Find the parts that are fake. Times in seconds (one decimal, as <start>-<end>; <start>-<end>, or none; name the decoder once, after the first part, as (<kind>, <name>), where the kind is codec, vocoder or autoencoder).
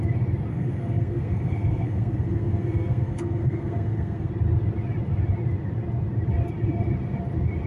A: 0.5-4.3 (codec, SNAC)